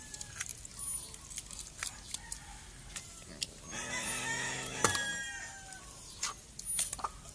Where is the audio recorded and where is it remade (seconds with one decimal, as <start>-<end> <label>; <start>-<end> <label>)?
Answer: 0.0-7.3 recorded